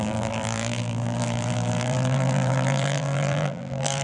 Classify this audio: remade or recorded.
remade